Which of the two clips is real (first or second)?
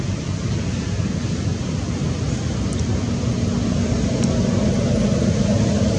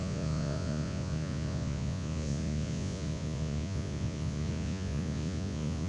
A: first